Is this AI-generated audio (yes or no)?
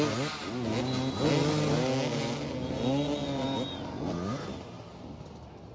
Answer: no